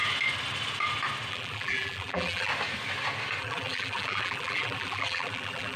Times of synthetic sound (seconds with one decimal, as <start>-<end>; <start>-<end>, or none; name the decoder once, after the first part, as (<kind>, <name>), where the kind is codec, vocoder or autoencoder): 1.3-2.5 (vocoder, BigVGAN v2); 3.4-5.8